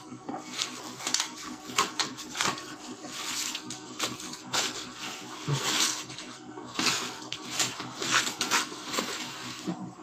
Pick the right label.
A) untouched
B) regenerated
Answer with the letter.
B